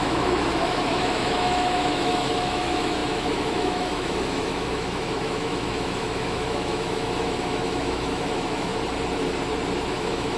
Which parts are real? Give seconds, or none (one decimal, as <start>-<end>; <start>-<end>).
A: 8.7-9.9

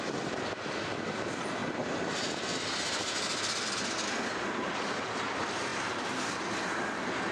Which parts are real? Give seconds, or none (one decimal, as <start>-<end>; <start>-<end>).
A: 0.0-7.3

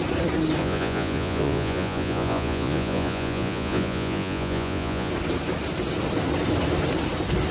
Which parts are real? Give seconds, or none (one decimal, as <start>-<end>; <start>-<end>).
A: 0.0-0.6; 5.1-7.5

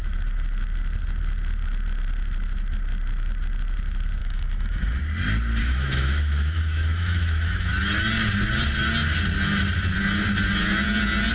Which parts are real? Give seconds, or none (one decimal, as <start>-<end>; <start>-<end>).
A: 0.0-4.2; 5.0-5.6; 7.7-11.3

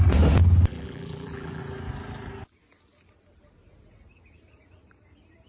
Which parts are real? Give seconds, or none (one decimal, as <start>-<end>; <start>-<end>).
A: 0.0-0.7; 1.6-5.5

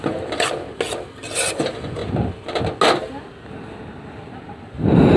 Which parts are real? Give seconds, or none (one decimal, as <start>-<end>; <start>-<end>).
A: 0.0-5.2

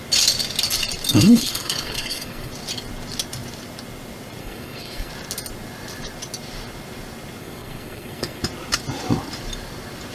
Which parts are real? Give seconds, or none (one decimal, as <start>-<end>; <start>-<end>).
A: 0.0-1.1; 2.5-4.4; 5.1-7.4; 8.4-10.1

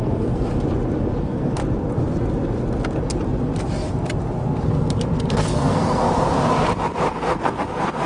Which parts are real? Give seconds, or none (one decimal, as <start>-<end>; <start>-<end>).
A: 0.5-1.2; 1.6-5.3; 6.1-7.1